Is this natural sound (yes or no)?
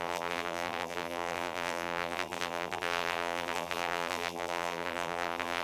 no